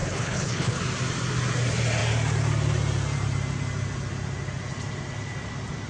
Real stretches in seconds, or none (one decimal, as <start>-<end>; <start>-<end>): 0.8-5.9